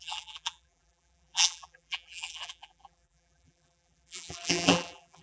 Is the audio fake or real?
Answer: fake